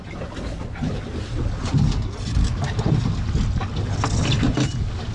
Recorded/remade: recorded